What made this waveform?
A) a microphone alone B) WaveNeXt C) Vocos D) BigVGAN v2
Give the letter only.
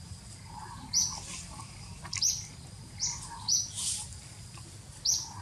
A